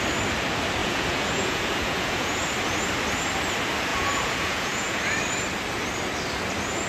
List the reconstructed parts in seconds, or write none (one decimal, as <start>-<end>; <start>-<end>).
0.8-2.4; 3.9-5.0